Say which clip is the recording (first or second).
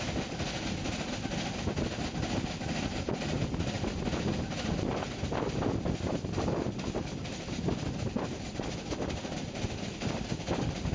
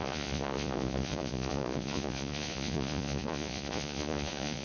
first